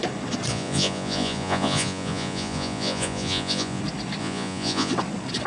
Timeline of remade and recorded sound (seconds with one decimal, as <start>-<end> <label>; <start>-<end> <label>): 0.0-0.5 recorded; 0.5-3.8 remade; 3.8-4.2 recorded; 4.2-4.9 remade; 4.9-5.5 recorded